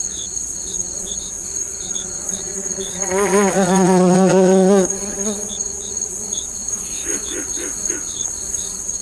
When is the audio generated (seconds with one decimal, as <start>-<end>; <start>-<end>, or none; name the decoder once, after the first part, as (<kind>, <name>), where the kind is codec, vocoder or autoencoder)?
0.0-9.0 (vocoder, Vocos)